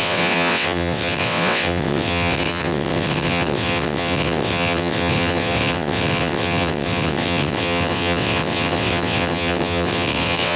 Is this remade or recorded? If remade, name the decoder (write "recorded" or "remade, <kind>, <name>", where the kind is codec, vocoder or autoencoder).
remade, vocoder, WaveNeXt